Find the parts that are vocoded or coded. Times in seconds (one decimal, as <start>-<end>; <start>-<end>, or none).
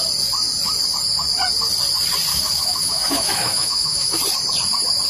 2.3-4.2